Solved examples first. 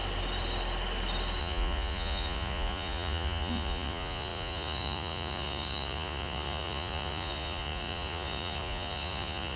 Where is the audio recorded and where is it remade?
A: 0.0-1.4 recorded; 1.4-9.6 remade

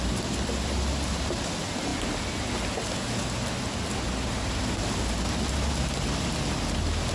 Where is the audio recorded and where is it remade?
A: 0.0-7.1 recorded

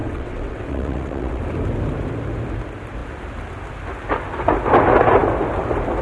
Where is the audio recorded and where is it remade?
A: 0.0-1.4 remade; 1.4-6.0 recorded

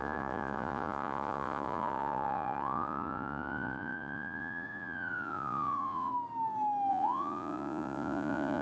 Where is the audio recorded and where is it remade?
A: 0.0-6.1 remade; 6.1-6.9 recorded; 6.9-8.6 remade

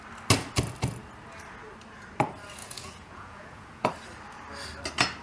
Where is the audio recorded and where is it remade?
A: 0.0-2.6 recorded; 2.6-3.9 remade; 3.9-5.2 recorded

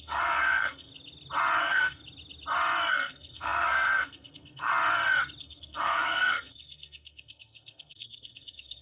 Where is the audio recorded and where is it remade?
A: 0.0-0.9 remade; 0.9-1.6 recorded; 1.6-2.0 remade; 2.0-2.9 recorded; 2.9-4.7 remade; 4.7-5.4 recorded; 5.4-8.8 remade